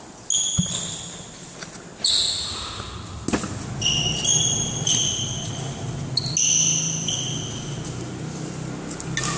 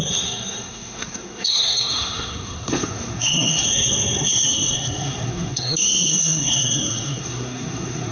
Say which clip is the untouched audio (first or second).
first